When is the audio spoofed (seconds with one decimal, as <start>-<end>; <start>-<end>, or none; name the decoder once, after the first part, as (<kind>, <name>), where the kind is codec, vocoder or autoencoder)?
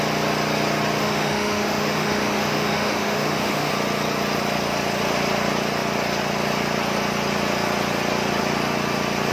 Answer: 1.0-3.7 (autoencoder, DAC-VAE)